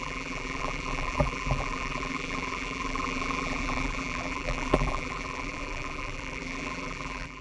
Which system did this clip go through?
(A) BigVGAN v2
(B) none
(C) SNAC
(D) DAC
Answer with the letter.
A